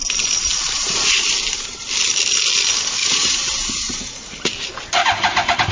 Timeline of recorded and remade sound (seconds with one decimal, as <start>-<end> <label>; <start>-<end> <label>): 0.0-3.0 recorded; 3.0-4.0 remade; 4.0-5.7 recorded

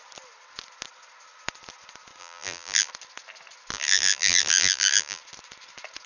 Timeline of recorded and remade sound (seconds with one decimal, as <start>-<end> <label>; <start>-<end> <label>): 0.0-2.2 recorded; 2.2-2.9 remade; 2.9-3.7 recorded; 3.7-5.2 remade; 5.2-6.1 recorded

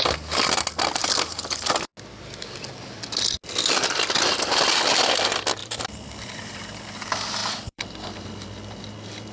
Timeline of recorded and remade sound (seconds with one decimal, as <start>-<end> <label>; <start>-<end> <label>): 0.0-5.6 recorded; 5.6-6.8 remade; 6.8-7.4 recorded; 7.4-8.1 remade; 8.1-9.3 recorded

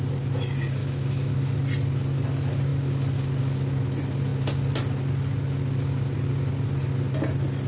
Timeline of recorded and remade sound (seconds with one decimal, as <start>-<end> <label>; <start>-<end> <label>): 0.0-0.8 recorded; 0.8-1.3 remade; 1.3-7.7 recorded

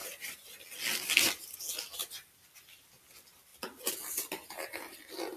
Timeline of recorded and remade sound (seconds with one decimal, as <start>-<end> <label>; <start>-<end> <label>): 0.0-0.6 remade; 0.6-5.4 recorded

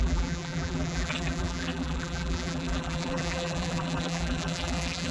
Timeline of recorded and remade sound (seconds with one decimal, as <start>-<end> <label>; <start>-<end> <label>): 0.0-5.1 remade

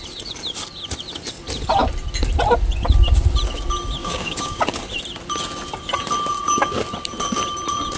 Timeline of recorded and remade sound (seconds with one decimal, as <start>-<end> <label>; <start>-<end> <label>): 0.0-4.0 recorded; 4.0-4.6 remade; 4.6-8.0 recorded

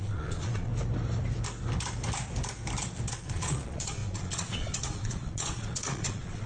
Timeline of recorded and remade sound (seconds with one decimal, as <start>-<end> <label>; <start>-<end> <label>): 0.0-0.7 remade; 0.7-3.1 recorded; 3.1-6.5 remade